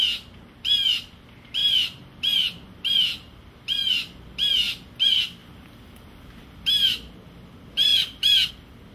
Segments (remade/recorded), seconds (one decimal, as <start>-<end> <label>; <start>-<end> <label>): 0.0-1.6 recorded; 1.6-4.2 remade; 4.2-5.4 recorded; 5.4-6.7 remade; 6.7-8.9 recorded

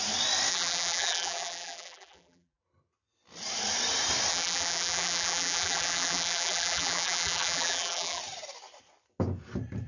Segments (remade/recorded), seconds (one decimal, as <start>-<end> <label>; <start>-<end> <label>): 0.0-0.5 recorded; 0.5-2.6 remade; 2.6-4.3 recorded; 4.3-8.2 remade; 8.2-9.9 recorded